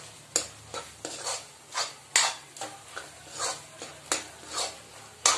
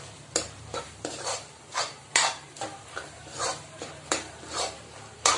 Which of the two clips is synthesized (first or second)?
second